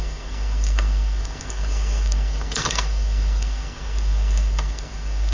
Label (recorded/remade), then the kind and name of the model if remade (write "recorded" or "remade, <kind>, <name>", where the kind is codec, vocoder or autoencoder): remade, codec, SNAC